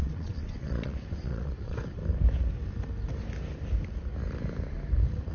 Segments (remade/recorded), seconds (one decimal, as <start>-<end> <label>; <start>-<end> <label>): 0.0-2.0 remade; 2.0-5.3 recorded